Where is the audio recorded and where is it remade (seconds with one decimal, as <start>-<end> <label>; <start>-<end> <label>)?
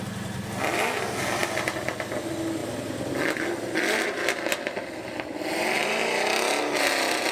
0.0-6.0 recorded; 6.0-6.6 remade; 6.6-7.3 recorded